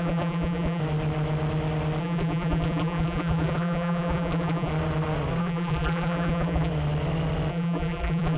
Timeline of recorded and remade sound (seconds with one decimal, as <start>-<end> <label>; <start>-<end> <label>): 0.0-0.8 remade; 0.8-2.0 recorded; 2.0-4.7 remade; 4.7-5.4 recorded; 5.4-6.7 remade; 6.7-7.5 recorded; 7.5-8.4 remade